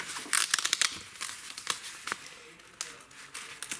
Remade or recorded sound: recorded